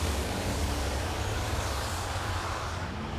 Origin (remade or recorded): remade